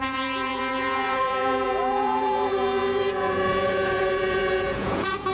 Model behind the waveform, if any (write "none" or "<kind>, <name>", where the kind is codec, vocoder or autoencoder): vocoder, Vocos